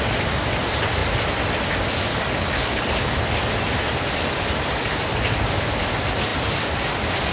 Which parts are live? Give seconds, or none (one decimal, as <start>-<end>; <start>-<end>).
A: 0.0-2.1; 2.8-7.3